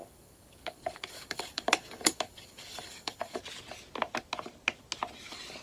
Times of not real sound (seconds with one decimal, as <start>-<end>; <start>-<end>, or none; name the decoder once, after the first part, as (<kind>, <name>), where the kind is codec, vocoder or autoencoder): 0.0-3.4 (codec, DAC)